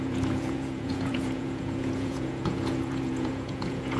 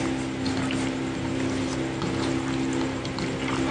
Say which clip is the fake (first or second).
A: first